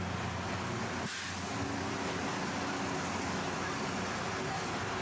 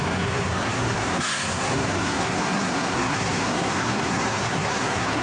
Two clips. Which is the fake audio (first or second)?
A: second